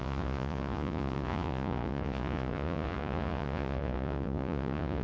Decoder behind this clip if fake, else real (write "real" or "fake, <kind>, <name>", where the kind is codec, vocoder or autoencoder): fake, vocoder, Vocos